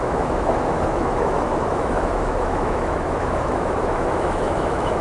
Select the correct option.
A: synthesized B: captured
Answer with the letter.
A